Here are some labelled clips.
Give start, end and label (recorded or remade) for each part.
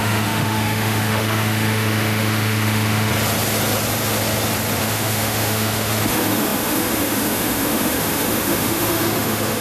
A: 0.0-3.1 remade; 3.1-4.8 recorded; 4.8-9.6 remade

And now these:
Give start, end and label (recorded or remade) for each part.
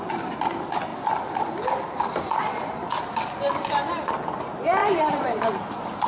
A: 0.0-4.8 recorded; 4.8-5.5 remade; 5.5-6.1 recorded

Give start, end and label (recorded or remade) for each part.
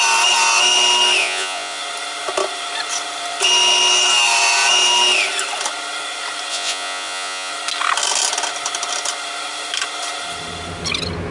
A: 0.0-1.2 recorded; 1.2-1.8 remade; 1.8-6.5 recorded; 6.5-7.5 remade; 7.5-11.3 recorded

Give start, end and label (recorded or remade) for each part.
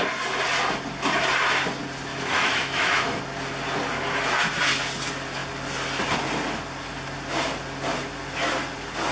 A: 0.0-2.1 recorded; 2.1-3.2 remade; 3.2-9.1 recorded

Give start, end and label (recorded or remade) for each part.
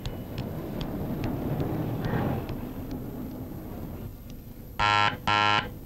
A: 0.0-0.4 recorded; 0.4-1.0 remade; 1.0-4.1 recorded; 4.1-4.7 remade; 4.7-5.9 recorded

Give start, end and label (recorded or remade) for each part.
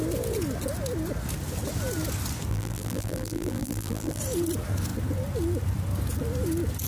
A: 0.0-2.5 recorded; 2.5-4.2 remade; 4.2-6.9 recorded